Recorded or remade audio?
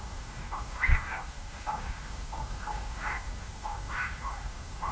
remade